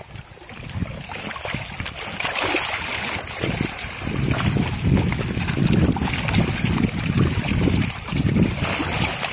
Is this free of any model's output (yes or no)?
yes